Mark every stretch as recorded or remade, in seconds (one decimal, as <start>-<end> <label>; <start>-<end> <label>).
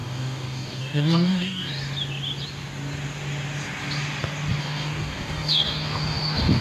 0.0-1.7 remade; 1.7-4.6 recorded; 4.6-6.6 remade